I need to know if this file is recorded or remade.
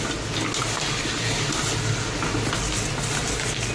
recorded